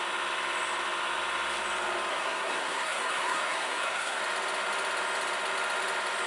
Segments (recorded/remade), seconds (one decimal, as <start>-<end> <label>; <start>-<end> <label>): 0.0-2.1 recorded; 2.1-4.2 remade; 4.2-6.3 recorded